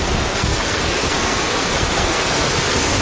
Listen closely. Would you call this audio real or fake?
fake